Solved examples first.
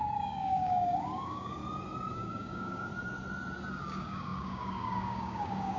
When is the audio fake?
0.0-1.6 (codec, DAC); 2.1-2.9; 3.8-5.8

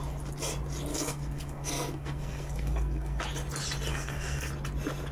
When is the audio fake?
0.9-3.2 (codec, SNAC); 3.9-4.5

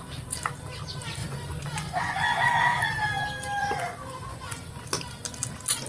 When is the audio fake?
1.2-2.6 (vocoder, Vocos); 3.6-4.8

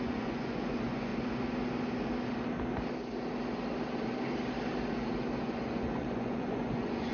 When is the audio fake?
0.0-1.1 (vocoder, Vocos); 5.4-7.1

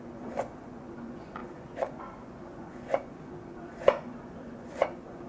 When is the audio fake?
0.0-5.3 (vocoder, Vocos)

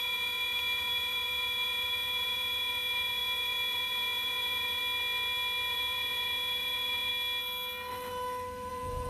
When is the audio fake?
0.0-4.8 (vocoder, Vocos); 5.7-7.1; 8.7-9.1

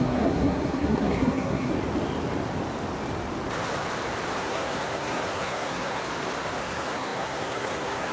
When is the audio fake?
0.0-1.7 (codec, SNAC); 4.4-6.0; 6.6-8.1

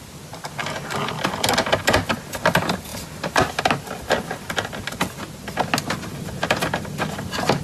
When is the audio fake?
none